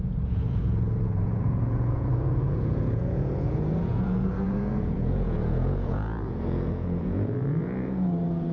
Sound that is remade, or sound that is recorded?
remade